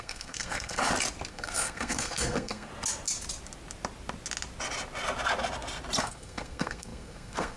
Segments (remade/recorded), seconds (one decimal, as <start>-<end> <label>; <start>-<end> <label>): 0.0-0.8 remade; 0.8-1.3 recorded; 1.3-2.7 remade; 2.7-6.0 recorded; 6.0-7.6 remade